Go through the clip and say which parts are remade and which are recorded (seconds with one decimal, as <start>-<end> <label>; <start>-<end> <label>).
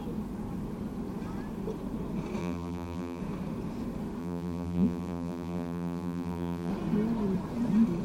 0.0-2.4 recorded; 2.4-3.2 remade; 3.2-4.2 recorded; 4.2-6.7 remade; 6.7-8.0 recorded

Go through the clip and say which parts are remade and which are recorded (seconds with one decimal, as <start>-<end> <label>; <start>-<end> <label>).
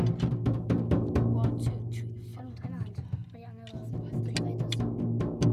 0.0-5.5 recorded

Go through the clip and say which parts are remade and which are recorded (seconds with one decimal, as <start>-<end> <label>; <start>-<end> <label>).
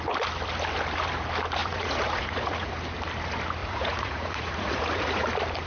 0.0-1.6 recorded; 1.6-2.7 remade; 2.7-3.6 recorded; 3.6-5.3 remade; 5.3-5.7 recorded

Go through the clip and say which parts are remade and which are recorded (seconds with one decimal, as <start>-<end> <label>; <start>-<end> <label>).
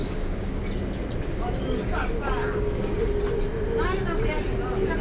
0.0-0.6 remade; 0.6-2.4 recorded; 2.4-3.1 remade; 3.1-5.0 recorded